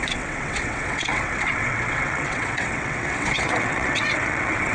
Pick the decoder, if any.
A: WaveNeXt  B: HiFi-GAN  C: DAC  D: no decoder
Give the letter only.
A